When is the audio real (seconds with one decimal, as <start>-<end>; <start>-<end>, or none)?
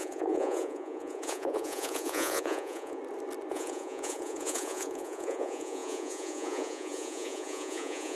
3.0-3.5